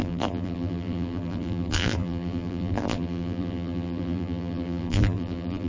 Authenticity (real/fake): fake